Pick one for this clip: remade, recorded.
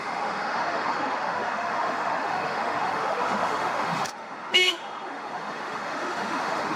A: remade